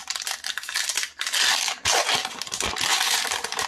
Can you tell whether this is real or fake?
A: real